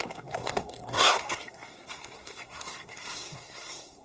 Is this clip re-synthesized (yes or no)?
yes